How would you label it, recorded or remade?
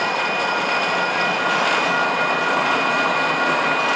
recorded